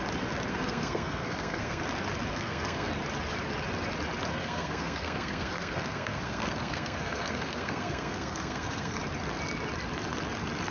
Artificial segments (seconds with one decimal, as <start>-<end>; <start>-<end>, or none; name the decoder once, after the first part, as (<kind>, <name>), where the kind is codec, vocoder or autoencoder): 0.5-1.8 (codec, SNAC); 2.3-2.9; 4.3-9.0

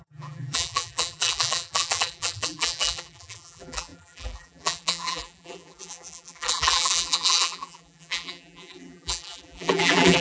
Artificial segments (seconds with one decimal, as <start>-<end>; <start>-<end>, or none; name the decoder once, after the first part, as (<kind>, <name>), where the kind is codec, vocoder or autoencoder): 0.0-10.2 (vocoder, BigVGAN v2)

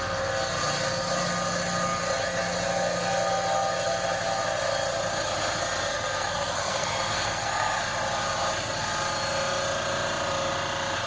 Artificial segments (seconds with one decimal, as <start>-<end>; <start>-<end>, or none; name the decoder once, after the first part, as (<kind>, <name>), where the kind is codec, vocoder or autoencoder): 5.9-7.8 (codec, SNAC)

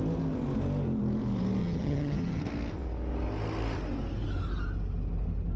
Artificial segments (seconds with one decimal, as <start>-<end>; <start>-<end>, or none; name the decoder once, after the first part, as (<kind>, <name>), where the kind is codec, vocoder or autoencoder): 1.6-2.4 (vocoder, HiFi-GAN)